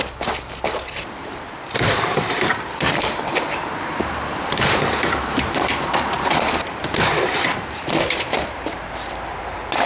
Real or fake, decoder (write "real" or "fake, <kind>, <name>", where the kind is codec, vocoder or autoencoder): fake, vocoder, BigVGAN v2